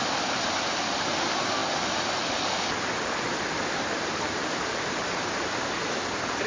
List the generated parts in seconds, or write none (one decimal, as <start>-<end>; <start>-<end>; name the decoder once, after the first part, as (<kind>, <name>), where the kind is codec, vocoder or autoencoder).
none